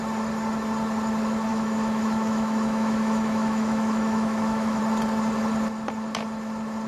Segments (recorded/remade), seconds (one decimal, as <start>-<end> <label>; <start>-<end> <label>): 0.0-1.5 recorded; 1.5-4.8 remade; 4.8-6.9 recorded

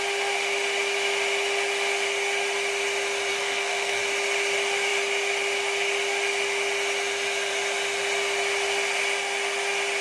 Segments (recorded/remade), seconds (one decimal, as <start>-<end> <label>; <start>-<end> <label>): 0.0-3.3 recorded; 3.3-4.0 remade; 4.0-10.0 recorded

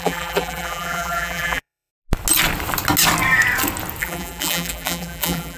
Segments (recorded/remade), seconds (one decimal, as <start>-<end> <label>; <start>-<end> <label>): 0.0-1.9 remade; 1.9-4.0 recorded; 4.0-5.6 remade

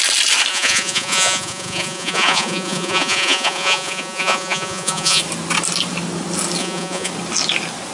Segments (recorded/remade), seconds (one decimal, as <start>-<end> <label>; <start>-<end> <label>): 0.0-0.5 recorded; 0.5-5.2 remade; 5.2-6.6 recorded; 6.6-7.1 remade; 7.1-7.9 recorded

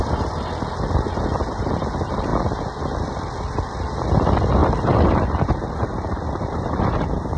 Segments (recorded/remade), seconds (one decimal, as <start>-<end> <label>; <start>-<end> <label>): 0.0-4.6 recorded; 4.6-7.4 remade

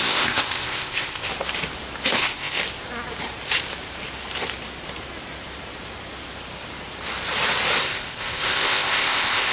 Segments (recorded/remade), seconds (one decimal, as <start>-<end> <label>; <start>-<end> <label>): 0.0-1.3 remade; 1.3-2.1 recorded; 2.1-2.6 remade; 2.6-7.8 recorded; 7.8-9.5 remade

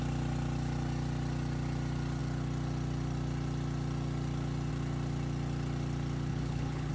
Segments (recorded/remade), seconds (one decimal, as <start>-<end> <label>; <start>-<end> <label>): 0.0-6.3 recorded; 6.3-6.9 remade